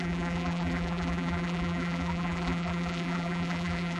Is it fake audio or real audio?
fake